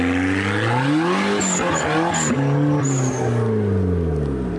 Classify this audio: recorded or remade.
recorded